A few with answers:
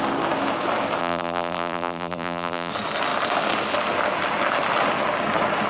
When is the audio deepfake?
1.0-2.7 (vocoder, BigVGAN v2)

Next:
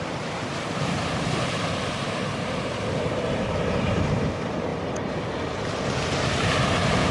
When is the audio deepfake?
0.0-4.7 (vocoder, BigVGAN v2); 6.3-7.1

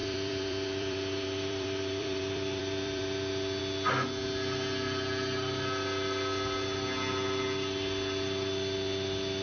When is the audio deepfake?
0.0-3.6 (vocoder, BigVGAN v2)

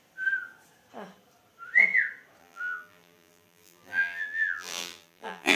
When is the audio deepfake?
2.4-5.6 (vocoder, BigVGAN v2)